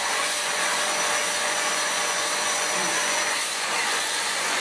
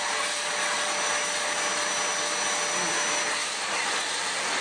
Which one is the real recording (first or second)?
second